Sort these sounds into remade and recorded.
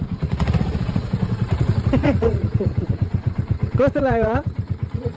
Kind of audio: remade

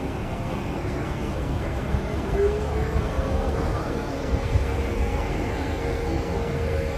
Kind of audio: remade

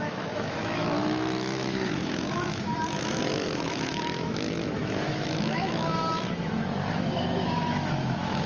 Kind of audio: remade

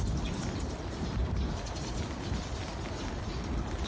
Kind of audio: recorded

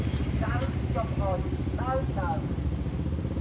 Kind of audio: recorded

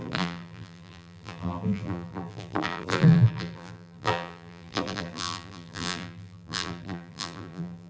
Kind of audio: remade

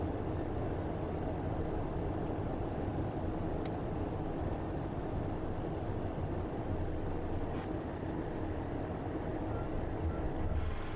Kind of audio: recorded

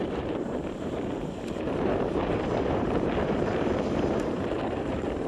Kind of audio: remade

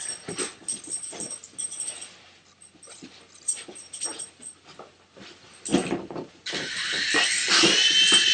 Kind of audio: recorded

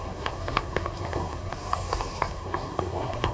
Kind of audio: remade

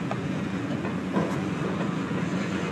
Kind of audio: remade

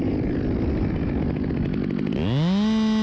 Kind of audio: recorded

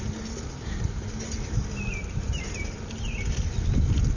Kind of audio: recorded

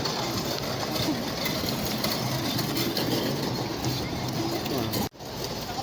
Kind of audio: recorded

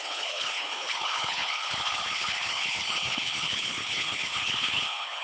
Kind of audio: remade